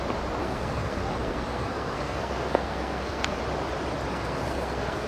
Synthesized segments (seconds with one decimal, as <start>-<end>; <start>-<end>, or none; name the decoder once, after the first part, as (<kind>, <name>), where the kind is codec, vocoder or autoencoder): 0.4-3.4 (codec, SNAC); 4.1-5.1